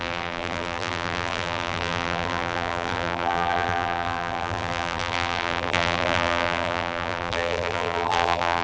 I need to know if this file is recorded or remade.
remade